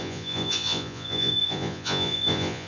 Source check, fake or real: fake